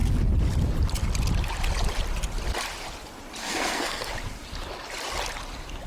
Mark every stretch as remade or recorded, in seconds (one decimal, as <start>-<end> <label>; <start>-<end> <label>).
0.0-3.4 recorded; 3.4-4.1 remade; 4.1-5.9 recorded